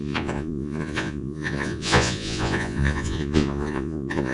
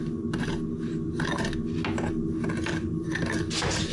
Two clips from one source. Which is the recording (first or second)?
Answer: second